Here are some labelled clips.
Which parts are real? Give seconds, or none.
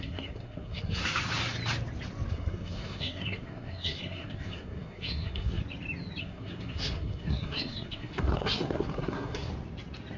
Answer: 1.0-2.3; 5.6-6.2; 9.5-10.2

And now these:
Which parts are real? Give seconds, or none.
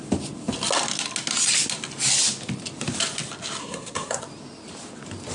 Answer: 0.0-3.6; 4.2-5.3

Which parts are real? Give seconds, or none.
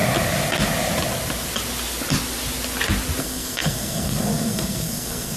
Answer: 0.0-3.2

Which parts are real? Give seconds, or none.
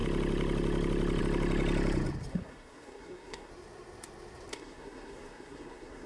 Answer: 0.0-2.3; 3.5-4.5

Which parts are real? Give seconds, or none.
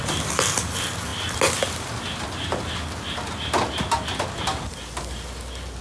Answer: 0.0-5.8